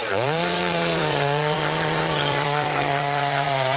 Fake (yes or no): yes